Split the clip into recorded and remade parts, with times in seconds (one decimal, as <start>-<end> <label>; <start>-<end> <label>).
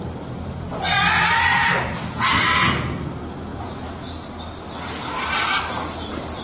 0.0-6.4 recorded